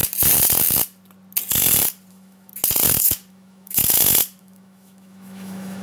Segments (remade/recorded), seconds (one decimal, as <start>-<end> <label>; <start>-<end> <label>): 0.0-2.1 recorded; 2.1-2.5 remade; 2.5-3.3 recorded; 3.3-3.8 remade; 3.8-4.4 recorded; 4.4-5.8 remade